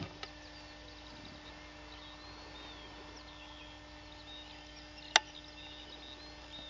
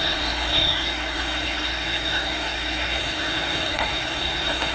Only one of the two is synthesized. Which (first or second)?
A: second